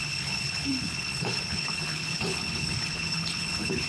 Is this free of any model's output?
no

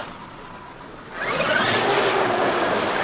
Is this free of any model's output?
yes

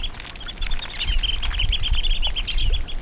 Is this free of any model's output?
yes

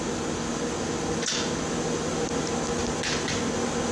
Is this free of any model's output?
yes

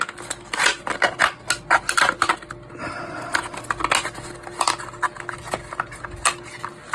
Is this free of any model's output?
yes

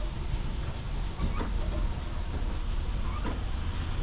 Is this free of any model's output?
yes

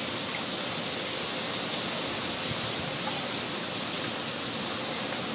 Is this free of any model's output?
yes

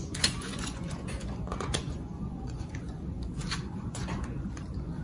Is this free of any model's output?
no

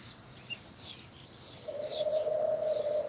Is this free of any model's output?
yes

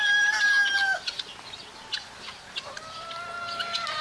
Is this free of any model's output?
yes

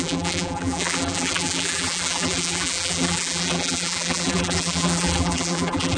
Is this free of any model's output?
no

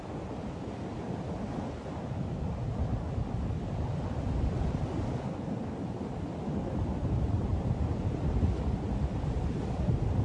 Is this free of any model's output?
yes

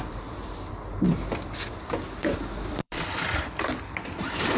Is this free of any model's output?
no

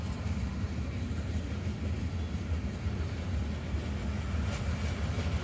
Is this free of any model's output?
yes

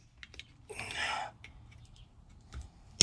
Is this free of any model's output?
yes